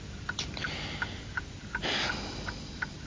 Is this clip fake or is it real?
real